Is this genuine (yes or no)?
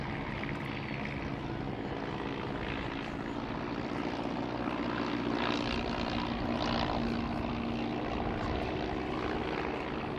yes